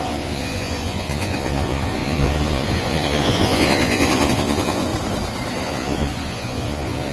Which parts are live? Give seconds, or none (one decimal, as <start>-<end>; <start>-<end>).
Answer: 4.9-5.6